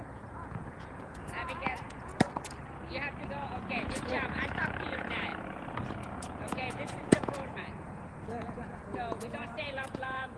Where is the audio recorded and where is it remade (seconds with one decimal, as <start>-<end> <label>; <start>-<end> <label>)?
0.0-2.1 remade; 2.1-3.3 recorded; 3.3-5.3 remade; 5.3-6.0 recorded; 6.0-10.4 remade